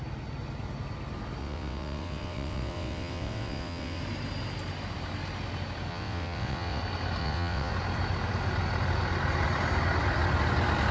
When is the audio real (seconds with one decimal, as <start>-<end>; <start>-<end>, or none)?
0.0-1.4; 4.0-5.9; 6.8-7.2; 7.7-10.9

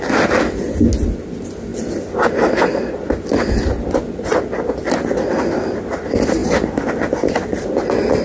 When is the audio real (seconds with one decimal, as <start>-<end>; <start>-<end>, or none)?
0.0-8.2

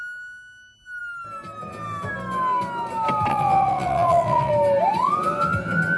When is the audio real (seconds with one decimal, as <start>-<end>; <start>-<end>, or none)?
0.0-3.3; 4.5-6.0